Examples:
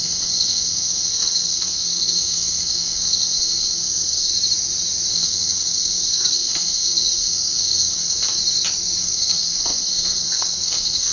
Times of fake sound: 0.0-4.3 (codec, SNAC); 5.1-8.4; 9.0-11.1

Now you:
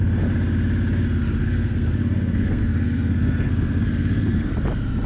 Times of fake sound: 1.4-4.5 (codec, SNAC)